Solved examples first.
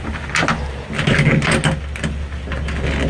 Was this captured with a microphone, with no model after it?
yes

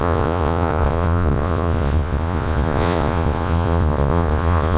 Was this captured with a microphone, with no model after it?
no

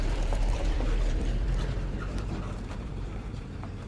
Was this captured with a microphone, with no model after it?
no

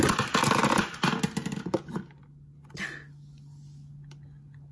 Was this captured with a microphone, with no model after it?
yes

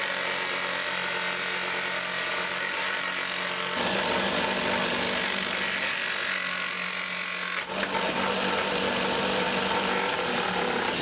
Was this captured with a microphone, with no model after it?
yes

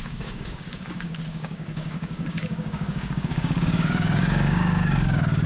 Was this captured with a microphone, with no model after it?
no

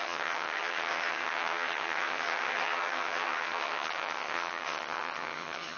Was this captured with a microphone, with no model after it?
no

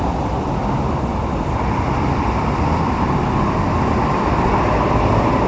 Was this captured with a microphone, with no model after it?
yes